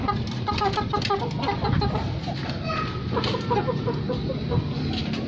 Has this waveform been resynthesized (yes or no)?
no